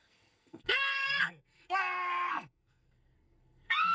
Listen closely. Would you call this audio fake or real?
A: fake